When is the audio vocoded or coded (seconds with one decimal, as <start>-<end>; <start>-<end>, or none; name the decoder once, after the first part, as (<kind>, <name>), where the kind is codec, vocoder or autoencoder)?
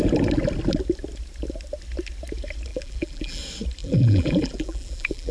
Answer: 2.7-3.4 (vocoder, BigVGAN v2); 3.8-5.3